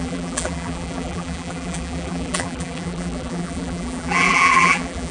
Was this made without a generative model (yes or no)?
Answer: no